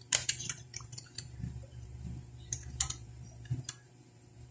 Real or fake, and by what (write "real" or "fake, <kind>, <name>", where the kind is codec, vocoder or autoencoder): fake, vocoder, BigVGAN v2